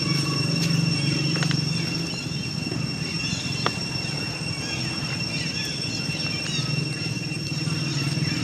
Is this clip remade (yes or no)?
no